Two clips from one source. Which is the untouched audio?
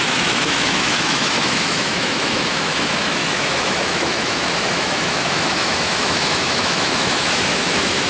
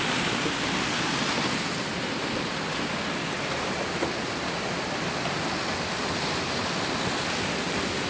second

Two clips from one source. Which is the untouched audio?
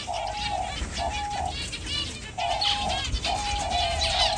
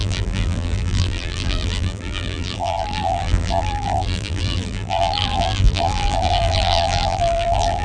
first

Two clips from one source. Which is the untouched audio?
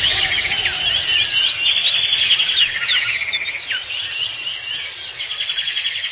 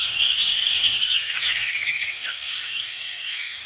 first